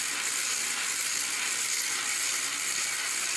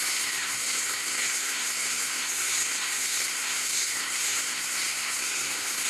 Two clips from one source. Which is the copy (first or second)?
second